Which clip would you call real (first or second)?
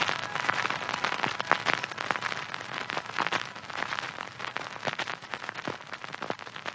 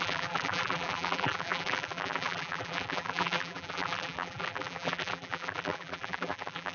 first